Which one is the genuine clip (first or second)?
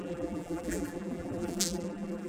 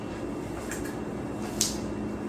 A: second